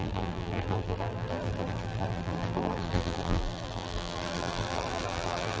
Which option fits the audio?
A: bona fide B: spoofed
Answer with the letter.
B